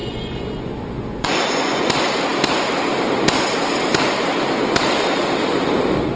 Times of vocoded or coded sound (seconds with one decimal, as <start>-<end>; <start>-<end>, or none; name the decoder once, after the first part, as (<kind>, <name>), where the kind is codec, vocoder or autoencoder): 0.0-1.9 (vocoder, Vocos)